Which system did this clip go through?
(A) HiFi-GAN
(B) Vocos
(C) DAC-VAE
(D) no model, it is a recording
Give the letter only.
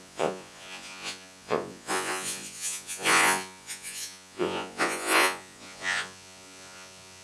B